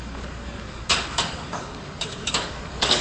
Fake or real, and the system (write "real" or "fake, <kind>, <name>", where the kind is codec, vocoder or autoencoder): fake, codec, DAC